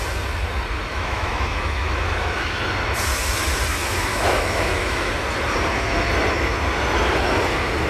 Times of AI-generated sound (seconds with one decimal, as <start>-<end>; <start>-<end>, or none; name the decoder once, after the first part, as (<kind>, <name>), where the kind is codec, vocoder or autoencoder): 0.9-2.6 (autoencoder, DAC-VAE); 4.1-5.1